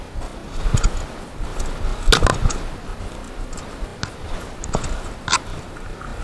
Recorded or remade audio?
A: recorded